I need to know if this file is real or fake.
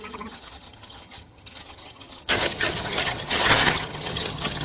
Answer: fake